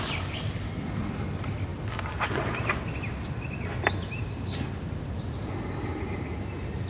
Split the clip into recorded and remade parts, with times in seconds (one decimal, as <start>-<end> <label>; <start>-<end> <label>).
0.0-6.9 recorded